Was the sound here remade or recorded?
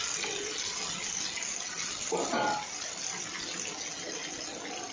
recorded